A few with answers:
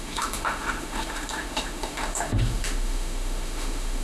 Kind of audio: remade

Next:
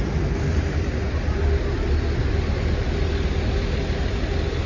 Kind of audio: recorded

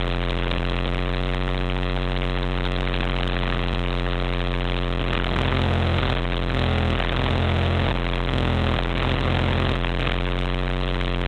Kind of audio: recorded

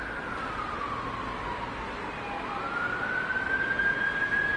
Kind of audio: recorded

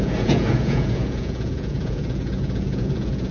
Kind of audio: remade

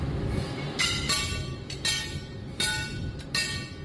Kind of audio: recorded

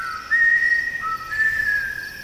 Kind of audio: recorded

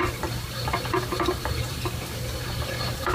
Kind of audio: remade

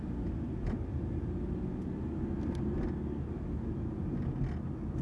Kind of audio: recorded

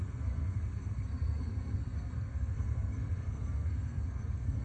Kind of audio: remade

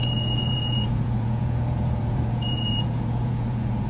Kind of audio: remade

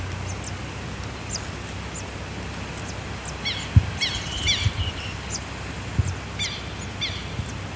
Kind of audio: recorded